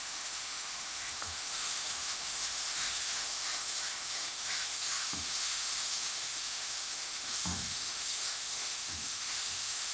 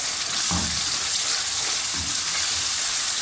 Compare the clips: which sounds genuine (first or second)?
second